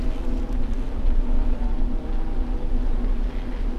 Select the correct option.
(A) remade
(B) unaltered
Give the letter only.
B